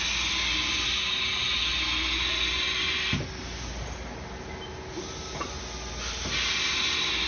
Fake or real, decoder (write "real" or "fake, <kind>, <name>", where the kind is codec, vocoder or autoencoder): real